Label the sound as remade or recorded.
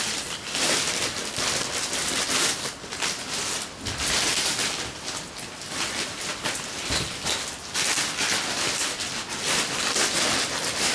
recorded